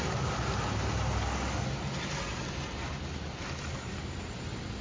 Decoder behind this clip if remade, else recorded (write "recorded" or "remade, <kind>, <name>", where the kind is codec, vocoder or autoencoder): recorded